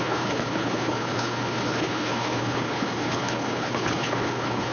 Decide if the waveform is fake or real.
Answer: fake